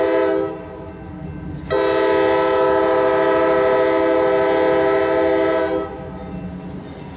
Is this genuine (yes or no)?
yes